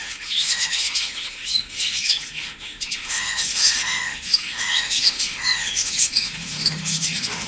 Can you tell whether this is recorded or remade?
remade